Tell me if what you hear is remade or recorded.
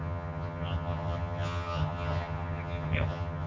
remade